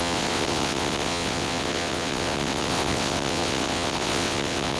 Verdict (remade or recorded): remade